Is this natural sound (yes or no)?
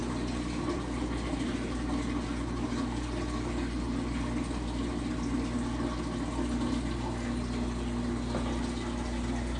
yes